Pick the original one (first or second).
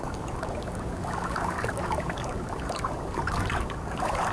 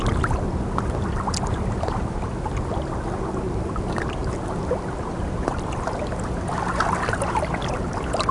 second